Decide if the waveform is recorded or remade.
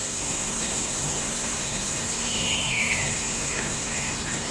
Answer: remade